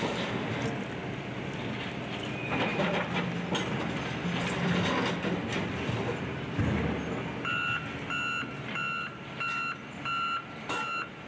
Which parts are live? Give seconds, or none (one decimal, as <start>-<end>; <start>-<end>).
0.0-2.7; 3.3-11.3